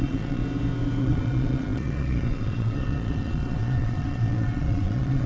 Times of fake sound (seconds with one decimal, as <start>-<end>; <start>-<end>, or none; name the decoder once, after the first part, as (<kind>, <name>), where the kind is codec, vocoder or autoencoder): 0.0-0.4 (vocoder, Vocos); 1.0-5.3